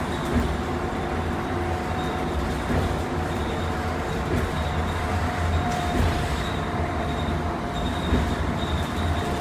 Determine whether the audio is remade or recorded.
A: remade